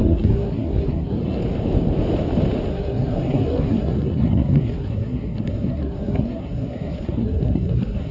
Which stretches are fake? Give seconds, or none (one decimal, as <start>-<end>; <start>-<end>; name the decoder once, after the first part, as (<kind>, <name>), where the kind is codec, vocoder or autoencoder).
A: 0.0-1.4 (codec, SNAC); 2.7-8.1